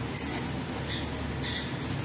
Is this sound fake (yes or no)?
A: no